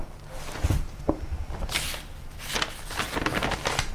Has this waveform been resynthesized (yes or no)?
no